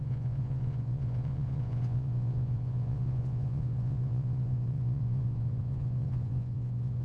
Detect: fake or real fake